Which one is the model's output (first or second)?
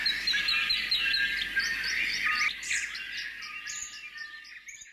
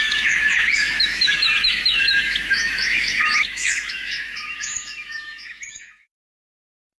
second